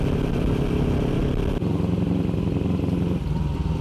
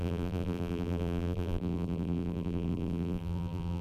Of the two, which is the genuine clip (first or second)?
first